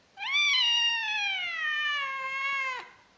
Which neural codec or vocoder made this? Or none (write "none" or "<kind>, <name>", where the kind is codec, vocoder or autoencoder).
none